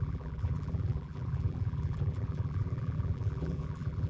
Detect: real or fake fake